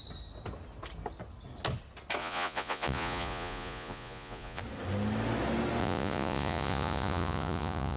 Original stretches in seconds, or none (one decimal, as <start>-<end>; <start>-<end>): 0.0-2.2; 4.6-5.8